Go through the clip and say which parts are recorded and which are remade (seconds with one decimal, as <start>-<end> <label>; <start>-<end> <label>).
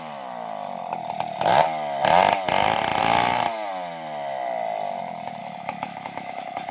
0.0-5.4 recorded; 5.4-6.7 remade